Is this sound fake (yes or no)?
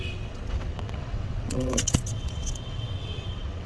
yes